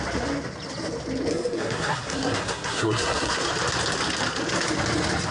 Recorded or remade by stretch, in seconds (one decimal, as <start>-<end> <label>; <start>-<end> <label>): 0.0-1.3 recorded; 1.3-3.4 remade; 3.4-5.3 recorded